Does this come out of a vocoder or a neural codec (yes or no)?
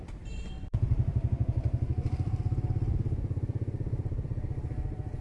yes